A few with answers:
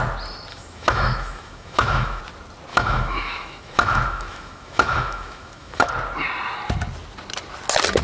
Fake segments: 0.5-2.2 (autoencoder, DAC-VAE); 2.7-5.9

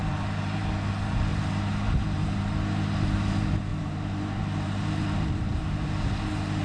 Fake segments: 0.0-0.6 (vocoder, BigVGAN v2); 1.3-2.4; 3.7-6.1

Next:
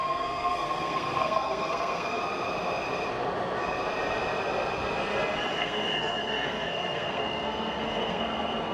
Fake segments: 0.0-2.2 (codec, SNAC); 5.5-8.7